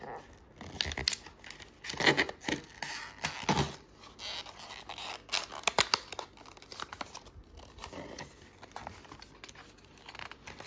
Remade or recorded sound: recorded